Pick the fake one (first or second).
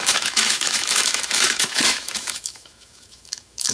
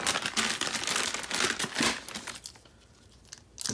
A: first